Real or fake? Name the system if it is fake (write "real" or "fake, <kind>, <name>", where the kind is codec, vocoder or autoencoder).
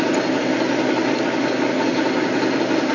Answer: real